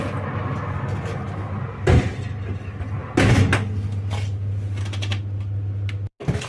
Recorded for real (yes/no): yes